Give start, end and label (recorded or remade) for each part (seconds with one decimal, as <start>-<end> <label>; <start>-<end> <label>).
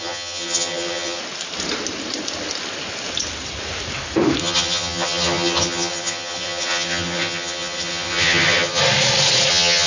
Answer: 0.0-1.2 remade; 1.2-4.4 recorded; 4.4-8.8 remade; 8.8-9.5 recorded; 9.5-9.9 remade